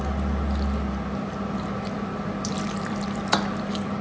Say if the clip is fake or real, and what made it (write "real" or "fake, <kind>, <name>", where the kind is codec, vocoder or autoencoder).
real